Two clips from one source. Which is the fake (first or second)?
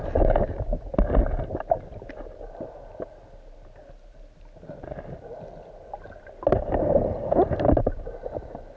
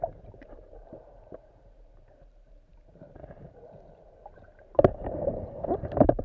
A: second